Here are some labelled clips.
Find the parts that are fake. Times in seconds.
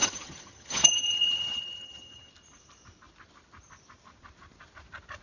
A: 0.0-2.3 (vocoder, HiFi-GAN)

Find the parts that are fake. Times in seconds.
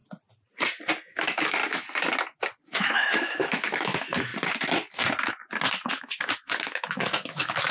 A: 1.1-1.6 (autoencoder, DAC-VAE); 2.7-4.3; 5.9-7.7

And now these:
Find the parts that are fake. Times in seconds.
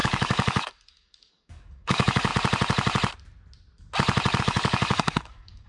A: 0.0-2.3 (codec, DAC); 4.4-5.7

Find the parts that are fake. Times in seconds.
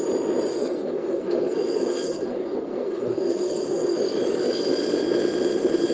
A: 0.5-4.0 (codec, SNAC)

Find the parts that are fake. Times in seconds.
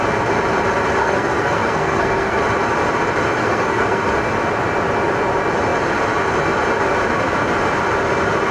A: 1.0-2.4 (codec, SNAC); 3.4-4.1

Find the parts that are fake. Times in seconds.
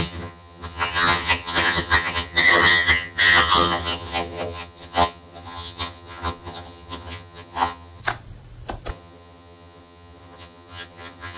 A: 0.0-8.0 (vocoder, HiFi-GAN); 8.9-11.4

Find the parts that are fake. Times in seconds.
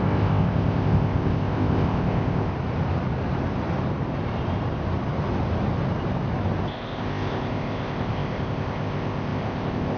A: 0.0-2.5 (codec, ZipCodec); 6.7-10.0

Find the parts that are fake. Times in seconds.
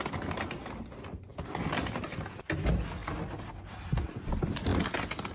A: none